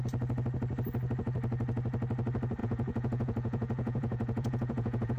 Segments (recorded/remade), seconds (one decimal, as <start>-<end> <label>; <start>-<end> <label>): 0.0-2.6 recorded; 2.6-5.2 remade